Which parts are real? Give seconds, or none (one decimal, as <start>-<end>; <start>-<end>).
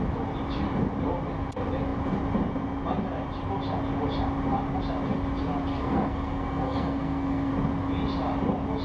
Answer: 0.0-5.7; 7.5-8.8